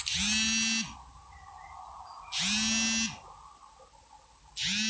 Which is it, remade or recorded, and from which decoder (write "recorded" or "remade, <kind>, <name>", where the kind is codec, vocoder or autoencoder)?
recorded